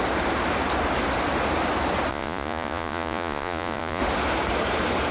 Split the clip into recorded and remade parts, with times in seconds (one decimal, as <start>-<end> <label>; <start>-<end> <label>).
0.0-2.1 recorded; 2.1-4.0 remade; 4.0-5.1 recorded